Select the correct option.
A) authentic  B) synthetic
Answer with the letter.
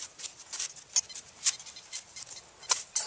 A